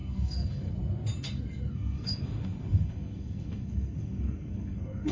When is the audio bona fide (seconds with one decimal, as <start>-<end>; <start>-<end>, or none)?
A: 0.7-1.7